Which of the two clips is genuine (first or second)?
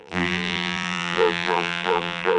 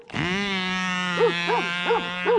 second